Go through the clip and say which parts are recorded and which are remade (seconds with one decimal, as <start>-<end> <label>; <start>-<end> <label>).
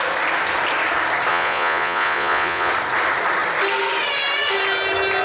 0.0-1.3 recorded; 1.3-2.7 remade; 2.7-5.2 recorded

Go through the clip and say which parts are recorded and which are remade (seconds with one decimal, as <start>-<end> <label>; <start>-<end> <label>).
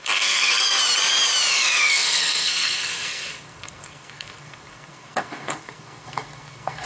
0.0-0.8 remade; 0.8-1.5 recorded; 1.5-6.9 remade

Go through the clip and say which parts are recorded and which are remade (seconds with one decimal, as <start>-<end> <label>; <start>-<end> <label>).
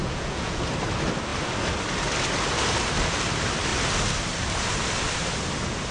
0.0-0.6 remade; 0.6-5.9 recorded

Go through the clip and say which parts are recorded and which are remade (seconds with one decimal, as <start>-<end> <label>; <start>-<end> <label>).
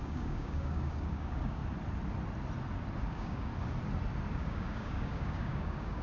0.0-1.6 remade; 1.6-3.0 recorded; 3.0-3.5 remade; 3.5-4.3 recorded; 4.3-6.0 remade